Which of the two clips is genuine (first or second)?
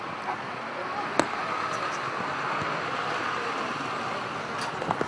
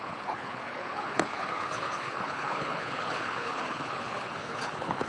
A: first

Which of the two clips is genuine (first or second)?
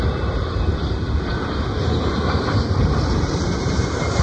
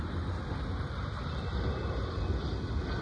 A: second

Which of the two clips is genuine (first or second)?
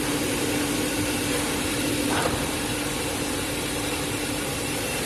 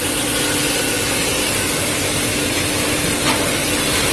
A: second